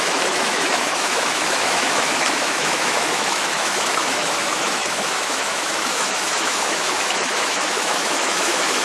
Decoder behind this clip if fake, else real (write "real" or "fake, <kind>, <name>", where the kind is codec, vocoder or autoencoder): fake, autoencoder, DAC-VAE